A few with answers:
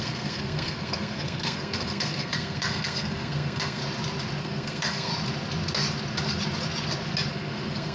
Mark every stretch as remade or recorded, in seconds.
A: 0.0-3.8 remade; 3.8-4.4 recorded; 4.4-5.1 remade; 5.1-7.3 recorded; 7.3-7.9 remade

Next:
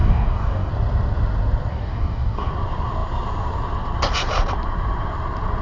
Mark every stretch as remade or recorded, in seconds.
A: 0.0-0.7 remade; 0.7-1.7 recorded; 1.7-2.5 remade; 2.5-5.6 recorded

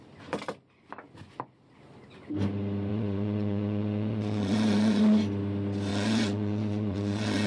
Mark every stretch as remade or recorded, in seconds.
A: 0.0-2.9 recorded; 2.9-5.0 remade; 5.0-5.9 recorded; 5.9-7.5 remade

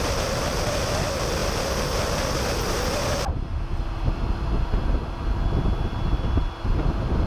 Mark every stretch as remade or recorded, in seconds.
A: 0.0-7.3 recorded

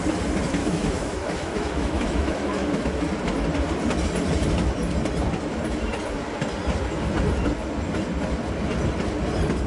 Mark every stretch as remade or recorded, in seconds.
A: 0.0-0.6 recorded; 0.6-3.1 remade; 3.1-9.7 recorded